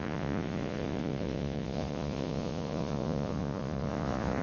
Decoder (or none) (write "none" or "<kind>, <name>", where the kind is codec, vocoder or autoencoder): vocoder, Vocos